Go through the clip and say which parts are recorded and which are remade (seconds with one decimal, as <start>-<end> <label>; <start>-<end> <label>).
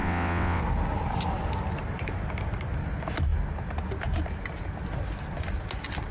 0.0-0.6 remade; 0.6-6.1 recorded